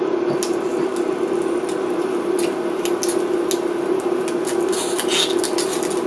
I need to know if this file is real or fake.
real